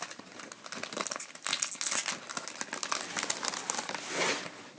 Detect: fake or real real